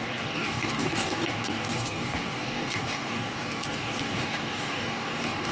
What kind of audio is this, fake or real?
fake